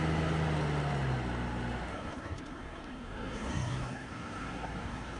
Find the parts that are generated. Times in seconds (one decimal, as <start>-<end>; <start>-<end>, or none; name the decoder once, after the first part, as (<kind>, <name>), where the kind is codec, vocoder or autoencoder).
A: 1.9-5.2 (codec, SNAC)